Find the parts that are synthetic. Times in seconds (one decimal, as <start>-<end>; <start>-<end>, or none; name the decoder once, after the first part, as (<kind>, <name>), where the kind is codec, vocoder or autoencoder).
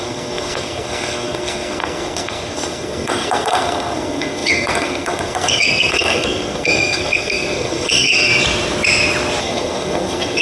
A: 0.0-8.3 (codec, SNAC); 9.4-10.4